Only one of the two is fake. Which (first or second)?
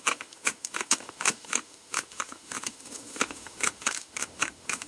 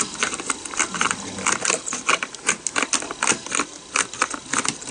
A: first